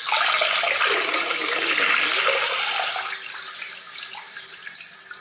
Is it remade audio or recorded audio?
recorded